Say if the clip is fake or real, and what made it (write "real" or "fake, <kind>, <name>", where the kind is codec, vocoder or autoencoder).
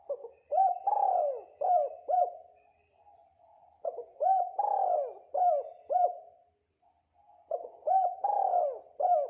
real